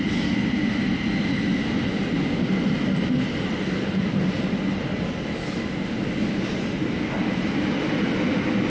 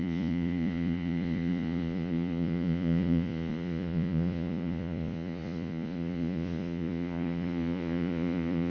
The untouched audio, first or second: first